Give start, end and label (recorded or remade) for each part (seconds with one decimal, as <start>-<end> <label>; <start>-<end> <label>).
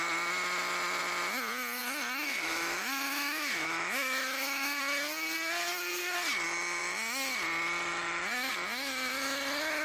0.0-2.3 recorded; 2.3-4.8 remade; 4.8-9.8 recorded